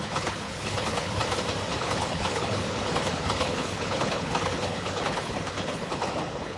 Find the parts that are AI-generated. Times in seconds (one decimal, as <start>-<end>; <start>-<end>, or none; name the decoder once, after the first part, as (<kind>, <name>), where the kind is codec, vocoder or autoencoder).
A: 0.0-1.2 (codec, HILCodec); 1.8-6.6